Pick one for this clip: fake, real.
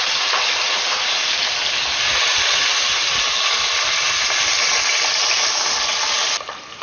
real